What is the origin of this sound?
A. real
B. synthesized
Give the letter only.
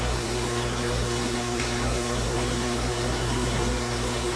B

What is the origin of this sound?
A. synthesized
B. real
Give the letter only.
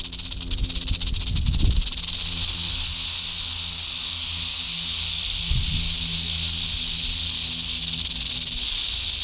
B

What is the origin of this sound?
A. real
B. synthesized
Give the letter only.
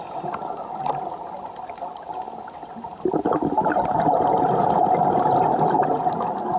A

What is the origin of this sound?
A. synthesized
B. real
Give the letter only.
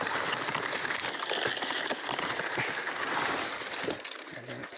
B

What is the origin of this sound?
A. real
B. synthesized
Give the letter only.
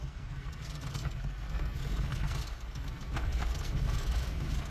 B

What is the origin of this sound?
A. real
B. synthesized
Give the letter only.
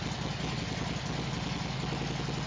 A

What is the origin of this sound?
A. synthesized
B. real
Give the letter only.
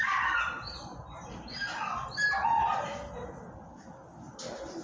B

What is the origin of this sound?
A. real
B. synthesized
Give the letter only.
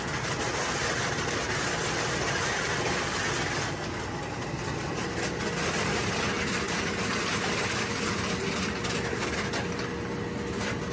A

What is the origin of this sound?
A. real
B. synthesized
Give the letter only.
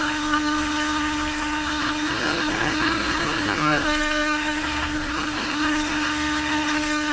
B